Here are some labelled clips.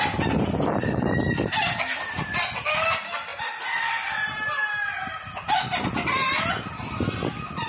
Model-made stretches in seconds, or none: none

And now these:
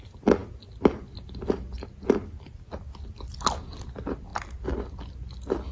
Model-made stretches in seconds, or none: none